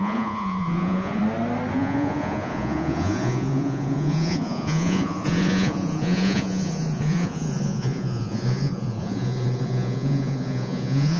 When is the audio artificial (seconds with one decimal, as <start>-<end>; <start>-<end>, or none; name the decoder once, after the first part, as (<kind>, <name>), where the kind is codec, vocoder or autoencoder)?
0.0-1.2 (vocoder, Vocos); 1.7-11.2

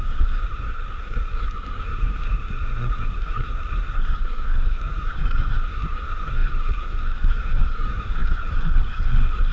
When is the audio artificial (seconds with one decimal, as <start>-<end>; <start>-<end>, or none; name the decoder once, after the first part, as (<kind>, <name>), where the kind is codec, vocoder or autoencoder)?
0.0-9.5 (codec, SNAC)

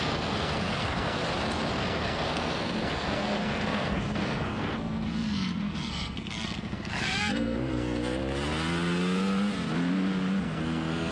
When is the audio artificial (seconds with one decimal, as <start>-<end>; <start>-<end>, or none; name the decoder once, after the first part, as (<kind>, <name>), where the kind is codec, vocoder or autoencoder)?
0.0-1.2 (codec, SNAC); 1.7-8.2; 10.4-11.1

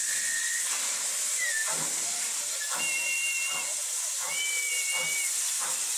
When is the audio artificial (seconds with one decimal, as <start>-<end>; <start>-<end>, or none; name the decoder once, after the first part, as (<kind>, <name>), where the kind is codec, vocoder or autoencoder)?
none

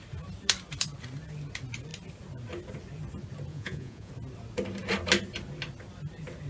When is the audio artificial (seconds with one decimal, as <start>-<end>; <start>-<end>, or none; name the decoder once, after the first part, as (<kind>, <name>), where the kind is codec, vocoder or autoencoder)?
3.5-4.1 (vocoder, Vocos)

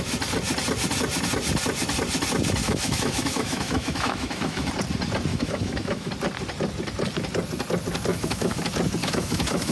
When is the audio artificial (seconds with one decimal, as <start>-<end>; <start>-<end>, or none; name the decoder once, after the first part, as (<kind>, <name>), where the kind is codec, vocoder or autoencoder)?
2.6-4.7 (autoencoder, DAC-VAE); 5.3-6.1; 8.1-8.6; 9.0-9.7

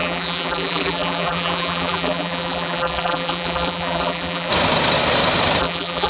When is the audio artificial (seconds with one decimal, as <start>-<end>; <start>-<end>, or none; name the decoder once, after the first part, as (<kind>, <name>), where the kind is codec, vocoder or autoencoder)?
0.0-4.5 (vocoder, BigVGAN v2); 5.6-6.1